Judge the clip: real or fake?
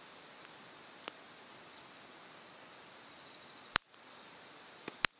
real